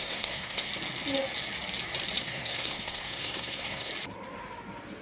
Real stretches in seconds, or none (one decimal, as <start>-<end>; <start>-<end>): 0.7-2.2; 3.9-5.0